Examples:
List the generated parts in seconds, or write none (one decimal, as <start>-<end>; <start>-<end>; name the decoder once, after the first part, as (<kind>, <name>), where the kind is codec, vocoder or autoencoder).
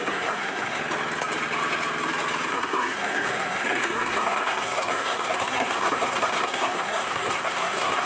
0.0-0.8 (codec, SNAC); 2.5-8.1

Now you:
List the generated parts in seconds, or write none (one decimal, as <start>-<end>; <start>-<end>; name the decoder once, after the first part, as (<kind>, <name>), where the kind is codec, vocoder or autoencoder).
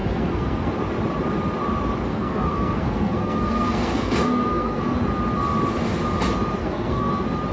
0.0-0.7 (codec, SNAC); 2.1-4.8; 6.6-7.1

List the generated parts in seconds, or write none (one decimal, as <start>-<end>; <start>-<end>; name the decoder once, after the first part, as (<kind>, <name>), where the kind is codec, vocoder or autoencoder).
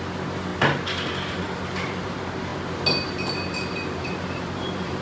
0.0-0.5 (vocoder, BigVGAN v2); 1.3-5.0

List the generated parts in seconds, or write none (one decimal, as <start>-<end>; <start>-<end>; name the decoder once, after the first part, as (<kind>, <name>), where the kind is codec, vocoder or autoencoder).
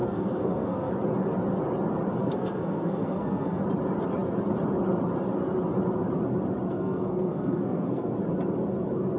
0.0-0.9 (codec, SNAC); 2.2-3.6; 6.7-8.1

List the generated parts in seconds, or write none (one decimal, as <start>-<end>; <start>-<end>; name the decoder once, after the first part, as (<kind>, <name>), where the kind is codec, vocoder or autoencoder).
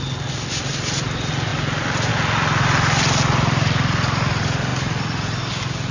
none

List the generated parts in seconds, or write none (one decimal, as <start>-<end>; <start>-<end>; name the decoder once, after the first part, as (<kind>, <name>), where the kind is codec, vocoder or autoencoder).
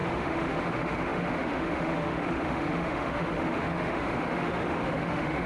0.0-5.5 (autoencoder, DAC-VAE)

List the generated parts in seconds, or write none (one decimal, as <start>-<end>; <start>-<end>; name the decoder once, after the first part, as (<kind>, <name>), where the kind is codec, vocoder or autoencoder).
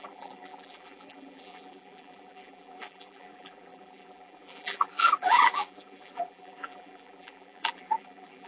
0.0-8.5 (vocoder, BigVGAN v2)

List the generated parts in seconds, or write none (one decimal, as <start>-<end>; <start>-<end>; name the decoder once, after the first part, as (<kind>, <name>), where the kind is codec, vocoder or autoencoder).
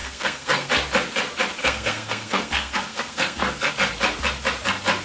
0.0-0.7 (codec, SNAC); 1.6-3.7